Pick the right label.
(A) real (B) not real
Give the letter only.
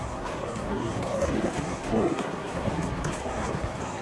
B